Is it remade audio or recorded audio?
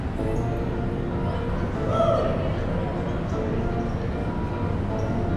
recorded